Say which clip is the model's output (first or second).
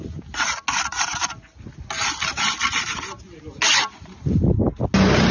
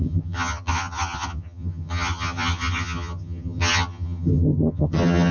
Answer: second